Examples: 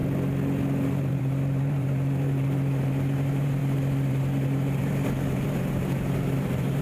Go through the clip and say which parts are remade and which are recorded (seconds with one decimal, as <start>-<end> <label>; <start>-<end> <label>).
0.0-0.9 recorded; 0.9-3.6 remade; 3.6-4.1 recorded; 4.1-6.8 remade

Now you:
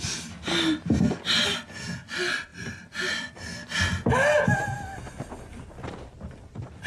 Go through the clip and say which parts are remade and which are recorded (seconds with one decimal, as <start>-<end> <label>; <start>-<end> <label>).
0.0-6.9 recorded

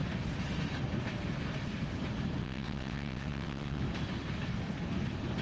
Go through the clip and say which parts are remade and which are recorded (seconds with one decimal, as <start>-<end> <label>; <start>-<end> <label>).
0.0-2.4 recorded; 2.4-3.8 remade; 3.8-5.4 recorded

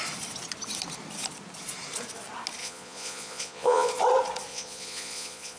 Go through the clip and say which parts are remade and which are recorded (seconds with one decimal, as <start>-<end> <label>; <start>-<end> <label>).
0.0-2.6 recorded; 2.6-3.9 remade; 3.9-4.5 recorded; 4.5-5.6 remade

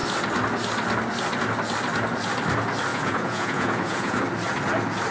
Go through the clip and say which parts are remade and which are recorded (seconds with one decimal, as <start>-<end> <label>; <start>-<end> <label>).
0.0-2.9 recorded; 2.9-4.2 remade; 4.2-5.1 recorded

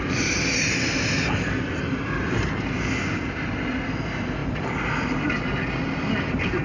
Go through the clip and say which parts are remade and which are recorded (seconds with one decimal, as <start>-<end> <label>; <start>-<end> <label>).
0.0-6.6 recorded